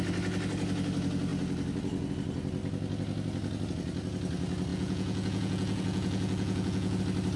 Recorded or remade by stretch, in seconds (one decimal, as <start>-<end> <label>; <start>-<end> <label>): 0.0-4.7 recorded; 4.7-7.0 remade; 7.0-7.4 recorded